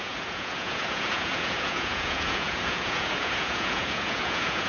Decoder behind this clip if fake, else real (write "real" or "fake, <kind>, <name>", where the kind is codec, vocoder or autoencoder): fake, vocoder, Vocos